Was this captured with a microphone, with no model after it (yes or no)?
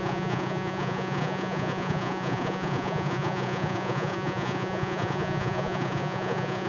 no